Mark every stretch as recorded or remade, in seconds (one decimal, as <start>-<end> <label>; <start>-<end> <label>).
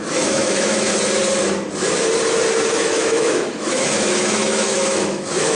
0.0-0.9 remade; 0.9-2.7 recorded; 2.7-5.5 remade